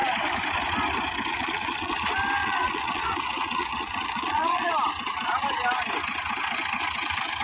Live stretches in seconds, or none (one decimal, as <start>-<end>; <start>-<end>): 0.0-1.3; 2.0-2.4; 4.7-7.4